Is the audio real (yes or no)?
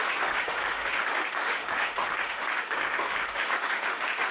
no